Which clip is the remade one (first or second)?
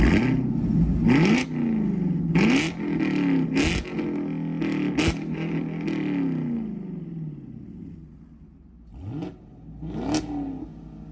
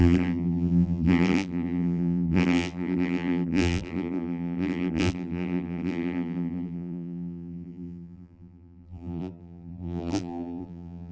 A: second